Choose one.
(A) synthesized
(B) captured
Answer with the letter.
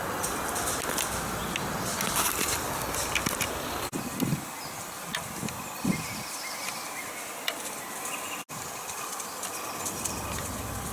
B